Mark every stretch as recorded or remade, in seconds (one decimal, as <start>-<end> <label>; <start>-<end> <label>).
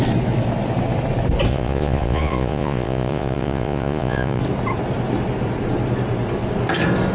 0.0-1.5 recorded; 1.5-4.4 remade; 4.4-7.1 recorded